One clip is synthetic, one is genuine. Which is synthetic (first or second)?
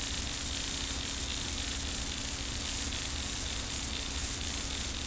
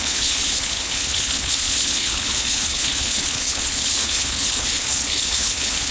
second